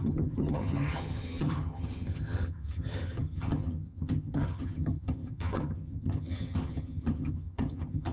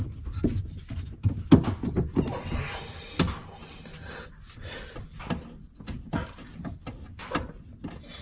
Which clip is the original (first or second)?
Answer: second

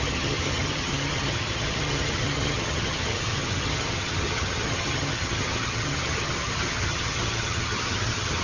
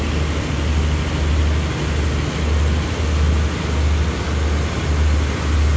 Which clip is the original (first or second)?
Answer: second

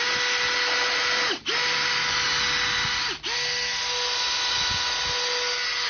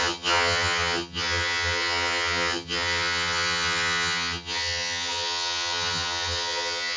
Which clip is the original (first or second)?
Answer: first